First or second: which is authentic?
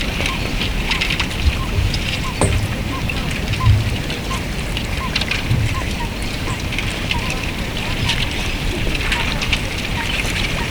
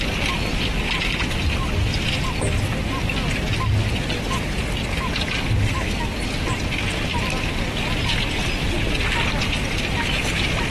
second